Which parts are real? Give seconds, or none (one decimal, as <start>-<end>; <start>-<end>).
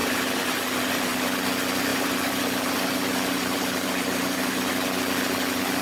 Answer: 0.6-1.9; 4.7-5.8